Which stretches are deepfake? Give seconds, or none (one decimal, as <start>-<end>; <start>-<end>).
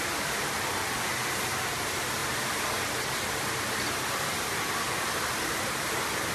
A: none